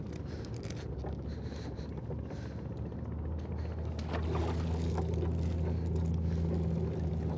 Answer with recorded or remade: recorded